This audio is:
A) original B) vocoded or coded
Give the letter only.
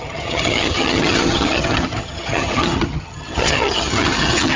B